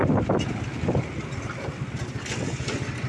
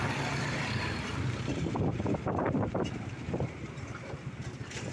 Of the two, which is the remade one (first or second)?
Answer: second